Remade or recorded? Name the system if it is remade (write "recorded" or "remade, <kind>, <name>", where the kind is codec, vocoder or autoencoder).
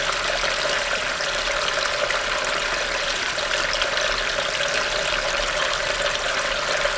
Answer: recorded